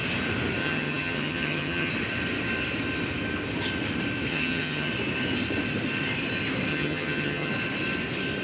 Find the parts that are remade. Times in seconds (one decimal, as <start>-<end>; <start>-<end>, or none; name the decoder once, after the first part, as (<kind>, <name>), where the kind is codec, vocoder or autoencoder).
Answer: 0.6-1.9 (vocoder, HiFi-GAN); 4.3-4.9; 6.7-7.5